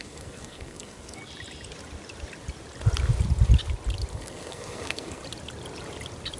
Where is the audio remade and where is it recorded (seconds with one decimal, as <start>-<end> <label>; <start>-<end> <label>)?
0.0-1.2 remade; 1.2-4.1 recorded; 4.1-5.2 remade; 5.2-6.4 recorded